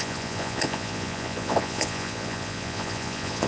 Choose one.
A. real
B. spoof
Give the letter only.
B